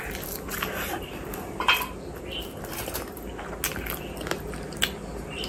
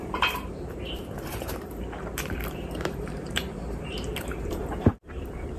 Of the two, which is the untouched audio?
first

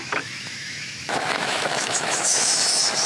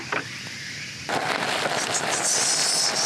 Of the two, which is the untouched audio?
second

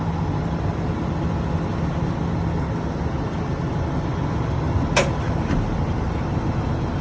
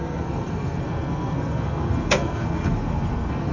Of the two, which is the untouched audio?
first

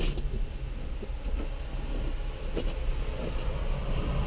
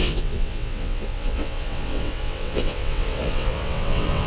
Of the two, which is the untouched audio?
first